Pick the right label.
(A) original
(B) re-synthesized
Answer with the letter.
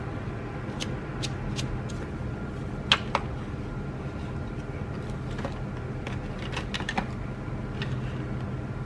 A